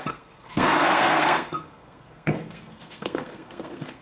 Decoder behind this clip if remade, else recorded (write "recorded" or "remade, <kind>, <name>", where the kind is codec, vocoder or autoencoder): remade, codec, SNAC